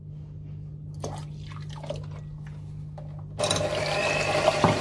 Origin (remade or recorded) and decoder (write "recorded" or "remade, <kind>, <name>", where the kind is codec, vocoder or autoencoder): recorded